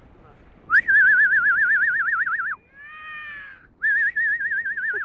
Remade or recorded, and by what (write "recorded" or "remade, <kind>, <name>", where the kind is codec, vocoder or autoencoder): recorded